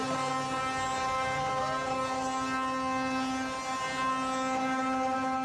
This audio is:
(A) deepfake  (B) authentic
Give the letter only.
B